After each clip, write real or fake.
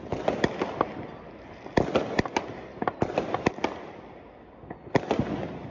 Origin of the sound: real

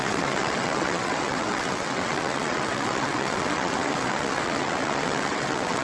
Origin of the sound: fake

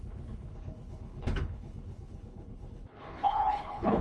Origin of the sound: fake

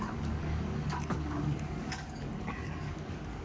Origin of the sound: fake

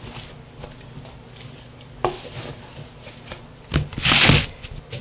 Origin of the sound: real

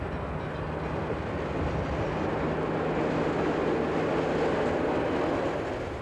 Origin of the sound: real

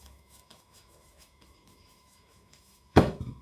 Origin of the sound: fake